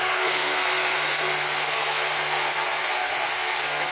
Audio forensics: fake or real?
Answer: fake